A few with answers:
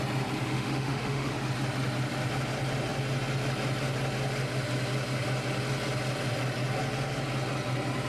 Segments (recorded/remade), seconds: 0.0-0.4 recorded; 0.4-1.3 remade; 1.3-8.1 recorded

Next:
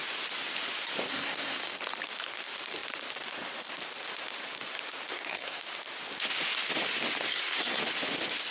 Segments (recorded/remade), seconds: 0.0-1.1 recorded; 1.1-1.7 remade; 1.7-5.1 recorded; 5.1-5.6 remade; 5.6-7.3 recorded; 7.3-7.8 remade; 7.8-8.5 recorded